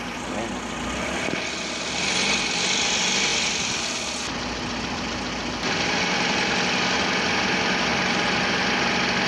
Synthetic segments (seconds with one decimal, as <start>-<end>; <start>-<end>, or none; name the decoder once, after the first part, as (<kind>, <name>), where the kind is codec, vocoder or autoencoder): none